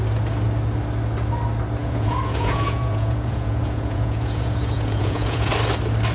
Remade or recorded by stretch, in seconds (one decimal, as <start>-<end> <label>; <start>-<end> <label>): 0.0-1.8 recorded; 1.8-5.5 remade; 5.5-6.1 recorded